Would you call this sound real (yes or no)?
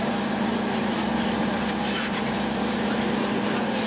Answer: no